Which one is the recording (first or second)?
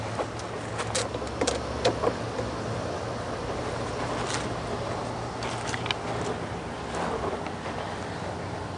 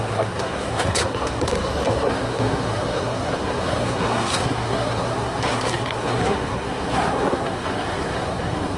first